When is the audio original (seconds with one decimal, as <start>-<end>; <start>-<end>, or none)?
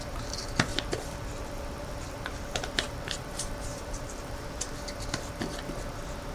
0.0-0.7; 4.5-6.3